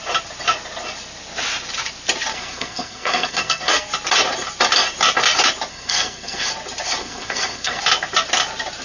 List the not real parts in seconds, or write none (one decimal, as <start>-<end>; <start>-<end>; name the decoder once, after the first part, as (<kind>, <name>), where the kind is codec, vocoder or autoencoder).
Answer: 2.3-3.9 (codec, SNAC); 5.7-6.5; 7.0-7.8